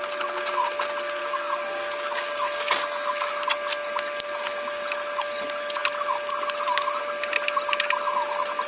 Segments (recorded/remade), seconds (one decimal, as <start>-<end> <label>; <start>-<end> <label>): 0.0-1.2 recorded; 1.2-3.3 remade; 3.3-8.7 recorded